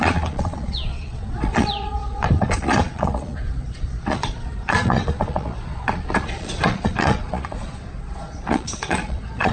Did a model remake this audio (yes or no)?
yes